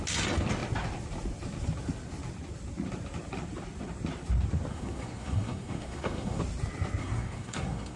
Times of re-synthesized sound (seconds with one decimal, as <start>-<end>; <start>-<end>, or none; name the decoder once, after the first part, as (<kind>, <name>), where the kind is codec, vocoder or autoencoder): 4.7-6.4 (codec, SNAC); 7.0-8.0